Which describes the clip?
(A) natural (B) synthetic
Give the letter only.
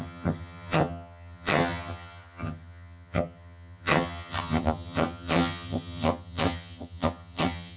B